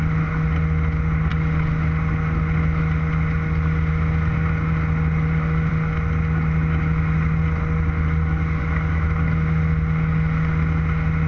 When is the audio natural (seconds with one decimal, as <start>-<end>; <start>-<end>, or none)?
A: 0.0-11.3